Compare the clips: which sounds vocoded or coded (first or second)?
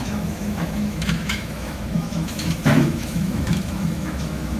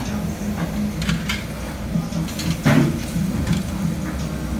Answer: first